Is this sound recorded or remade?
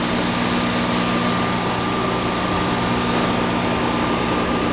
recorded